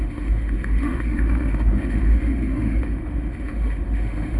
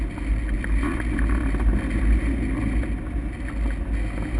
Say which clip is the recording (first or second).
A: second